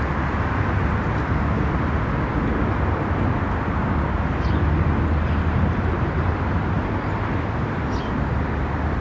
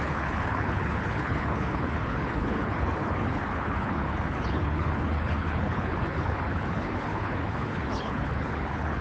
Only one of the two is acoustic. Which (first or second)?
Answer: first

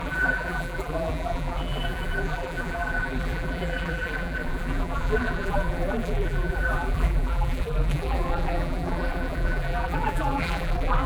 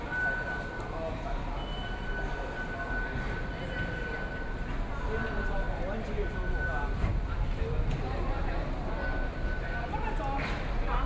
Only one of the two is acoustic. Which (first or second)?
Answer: second